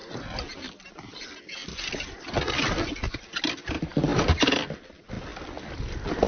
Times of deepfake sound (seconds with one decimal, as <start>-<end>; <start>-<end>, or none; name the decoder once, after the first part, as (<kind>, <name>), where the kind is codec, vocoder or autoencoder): none